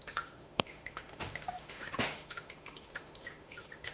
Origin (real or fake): fake